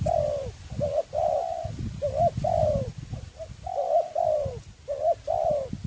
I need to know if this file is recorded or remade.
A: recorded